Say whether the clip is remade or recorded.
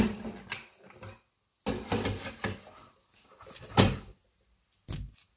recorded